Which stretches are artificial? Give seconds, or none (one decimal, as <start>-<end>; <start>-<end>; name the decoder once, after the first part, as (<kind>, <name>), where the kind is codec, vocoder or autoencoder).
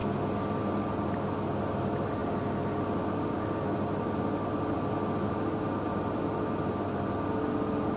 none